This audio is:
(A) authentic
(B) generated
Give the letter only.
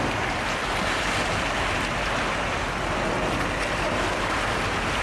A